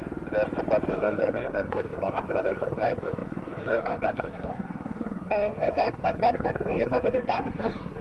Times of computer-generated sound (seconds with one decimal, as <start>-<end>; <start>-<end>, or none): 0.9-8.0